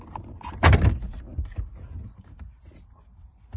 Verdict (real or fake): fake